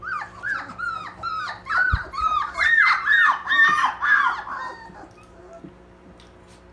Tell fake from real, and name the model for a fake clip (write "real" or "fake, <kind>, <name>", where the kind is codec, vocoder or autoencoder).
real